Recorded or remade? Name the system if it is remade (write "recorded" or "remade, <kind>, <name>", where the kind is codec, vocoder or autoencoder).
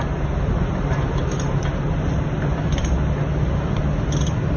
recorded